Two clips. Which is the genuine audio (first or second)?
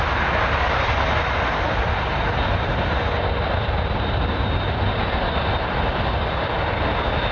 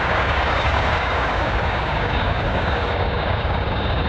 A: first